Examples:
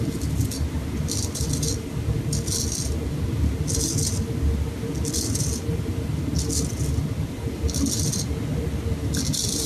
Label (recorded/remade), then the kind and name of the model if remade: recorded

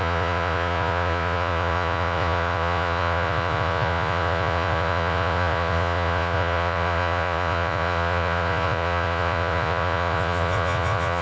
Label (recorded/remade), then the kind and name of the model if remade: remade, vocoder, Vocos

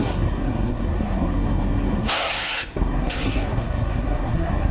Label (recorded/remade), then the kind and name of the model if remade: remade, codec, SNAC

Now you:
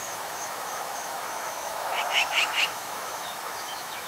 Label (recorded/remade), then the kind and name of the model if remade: remade, autoencoder, DAC-VAE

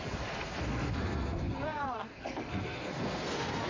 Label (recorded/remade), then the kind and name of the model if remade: remade, codec, SNAC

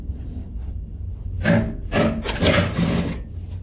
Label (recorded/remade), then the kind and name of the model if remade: recorded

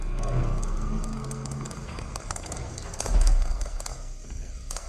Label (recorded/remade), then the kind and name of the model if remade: remade, codec, SNAC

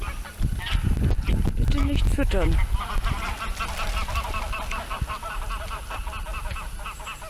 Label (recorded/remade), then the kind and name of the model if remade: recorded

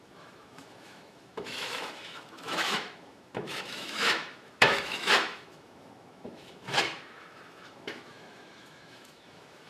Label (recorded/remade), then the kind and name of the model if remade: remade, autoencoder, DAC-VAE